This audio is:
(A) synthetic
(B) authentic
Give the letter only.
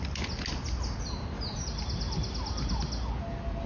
B